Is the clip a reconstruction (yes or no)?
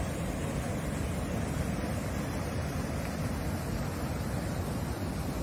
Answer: no